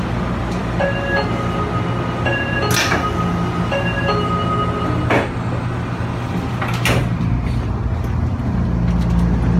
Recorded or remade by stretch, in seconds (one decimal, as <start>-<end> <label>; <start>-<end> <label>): 0.0-9.6 recorded